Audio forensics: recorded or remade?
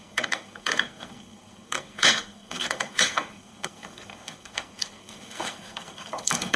remade